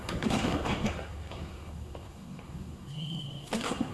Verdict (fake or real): fake